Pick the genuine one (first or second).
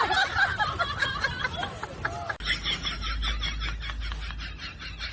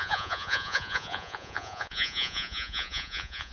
first